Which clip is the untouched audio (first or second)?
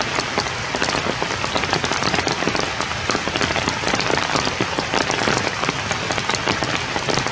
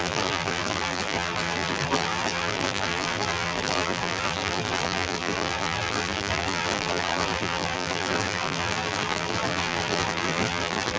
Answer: first